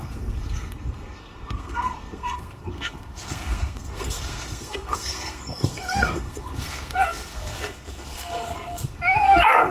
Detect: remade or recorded remade